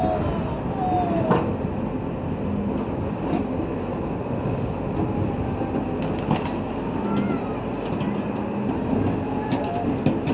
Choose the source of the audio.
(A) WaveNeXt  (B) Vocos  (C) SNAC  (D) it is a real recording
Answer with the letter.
D